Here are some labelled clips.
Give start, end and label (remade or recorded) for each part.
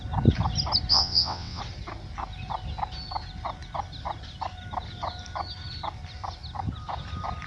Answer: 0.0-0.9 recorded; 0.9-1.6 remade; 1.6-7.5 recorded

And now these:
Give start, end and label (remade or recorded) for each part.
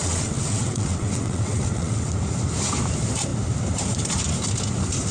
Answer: 0.0-2.1 remade; 2.1-5.1 recorded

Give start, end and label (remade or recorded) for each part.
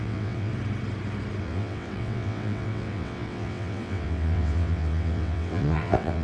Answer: 0.0-0.5 remade; 0.5-1.4 recorded; 1.4-6.2 remade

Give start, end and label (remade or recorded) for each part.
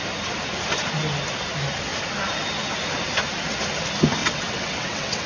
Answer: 0.0-4.2 recorded; 4.2-5.3 remade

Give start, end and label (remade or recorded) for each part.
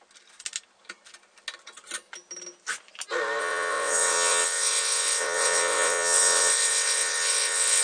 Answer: 0.0-3.4 recorded; 3.4-7.8 remade